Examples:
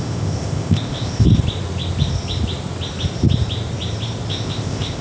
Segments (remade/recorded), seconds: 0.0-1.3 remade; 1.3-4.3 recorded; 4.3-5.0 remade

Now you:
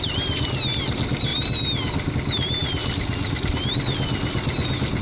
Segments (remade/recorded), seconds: 0.0-5.0 recorded